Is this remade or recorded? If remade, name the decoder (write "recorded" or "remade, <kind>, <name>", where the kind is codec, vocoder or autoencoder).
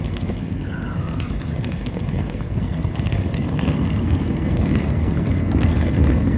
remade, codec, SNAC